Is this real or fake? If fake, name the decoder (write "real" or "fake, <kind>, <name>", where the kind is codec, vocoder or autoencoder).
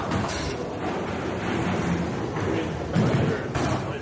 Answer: real